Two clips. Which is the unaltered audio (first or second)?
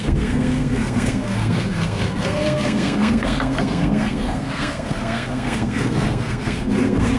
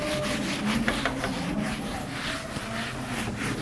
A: second